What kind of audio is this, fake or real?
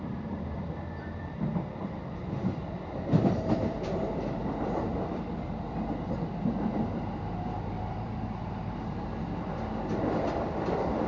fake